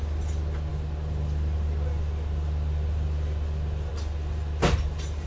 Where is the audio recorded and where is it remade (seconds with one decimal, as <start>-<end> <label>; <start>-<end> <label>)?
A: 0.0-5.3 recorded